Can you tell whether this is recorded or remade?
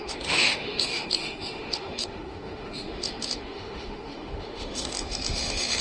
remade